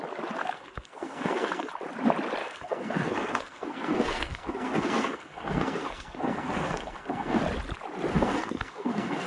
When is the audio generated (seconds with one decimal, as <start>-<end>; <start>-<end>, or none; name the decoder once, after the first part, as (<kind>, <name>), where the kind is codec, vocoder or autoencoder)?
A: 0.4-1.7 (codec, SNAC); 2.4-7.4; 8.1-9.3